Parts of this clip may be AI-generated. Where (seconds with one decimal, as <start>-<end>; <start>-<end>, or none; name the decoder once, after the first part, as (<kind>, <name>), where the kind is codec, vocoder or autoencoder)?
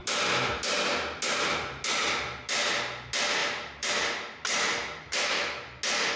3.4-3.9 (vocoder, BigVGAN v2)